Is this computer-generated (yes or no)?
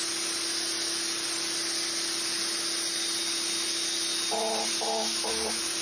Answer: no